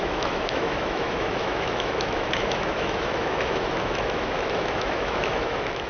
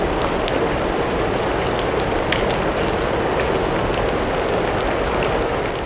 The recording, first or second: second